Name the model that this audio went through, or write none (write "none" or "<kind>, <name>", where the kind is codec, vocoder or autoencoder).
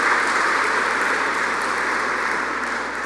vocoder, BigVGAN v2